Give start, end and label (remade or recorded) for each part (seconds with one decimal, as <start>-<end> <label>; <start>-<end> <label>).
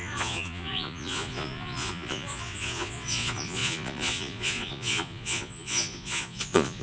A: 0.0-6.8 remade